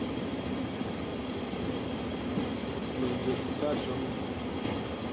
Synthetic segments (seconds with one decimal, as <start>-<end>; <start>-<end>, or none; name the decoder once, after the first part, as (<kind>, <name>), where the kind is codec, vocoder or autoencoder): 1.1-1.8 (vocoder, BigVGAN v2); 2.3-2.8; 3.2-4.0